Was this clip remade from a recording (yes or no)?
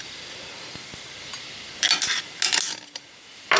no